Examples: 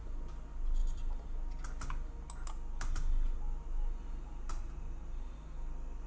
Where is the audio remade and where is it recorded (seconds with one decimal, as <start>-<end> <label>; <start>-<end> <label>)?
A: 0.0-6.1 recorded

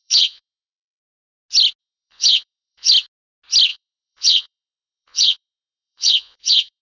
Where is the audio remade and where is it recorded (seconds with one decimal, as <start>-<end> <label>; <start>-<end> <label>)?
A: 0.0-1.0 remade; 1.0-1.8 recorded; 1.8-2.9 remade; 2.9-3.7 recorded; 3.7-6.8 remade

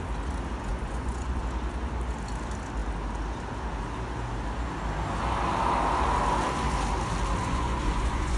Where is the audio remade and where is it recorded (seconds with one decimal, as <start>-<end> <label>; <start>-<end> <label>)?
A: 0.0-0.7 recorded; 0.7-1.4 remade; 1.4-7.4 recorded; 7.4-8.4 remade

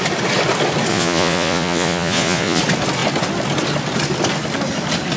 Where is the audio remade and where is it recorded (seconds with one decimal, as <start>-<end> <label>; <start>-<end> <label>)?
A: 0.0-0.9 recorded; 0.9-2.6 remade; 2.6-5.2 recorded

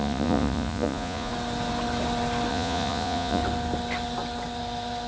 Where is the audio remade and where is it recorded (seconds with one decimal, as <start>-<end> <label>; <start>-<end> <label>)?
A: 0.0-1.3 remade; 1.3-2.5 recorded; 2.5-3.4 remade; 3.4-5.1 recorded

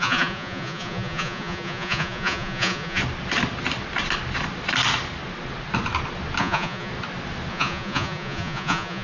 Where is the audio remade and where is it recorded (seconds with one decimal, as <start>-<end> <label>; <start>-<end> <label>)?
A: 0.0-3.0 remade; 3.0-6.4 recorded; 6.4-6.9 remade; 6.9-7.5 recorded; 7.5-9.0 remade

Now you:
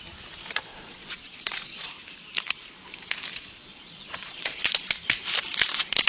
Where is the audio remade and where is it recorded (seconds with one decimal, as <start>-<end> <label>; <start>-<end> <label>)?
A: 0.0-0.7 recorded; 0.7-1.9 remade; 1.9-3.3 recorded; 3.3-4.5 remade; 4.5-6.1 recorded

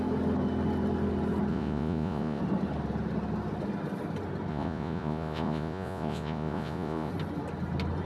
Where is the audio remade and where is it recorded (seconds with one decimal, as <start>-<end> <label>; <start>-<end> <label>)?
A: 0.0-1.5 recorded; 1.5-2.4 remade; 2.4-4.5 recorded; 4.5-7.1 remade; 7.1-8.1 recorded